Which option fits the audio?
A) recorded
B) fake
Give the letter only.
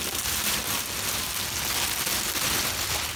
A